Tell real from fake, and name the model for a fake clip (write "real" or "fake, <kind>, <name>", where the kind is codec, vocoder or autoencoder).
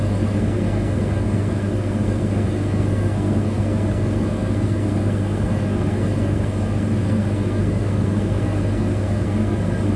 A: fake, codec, SNAC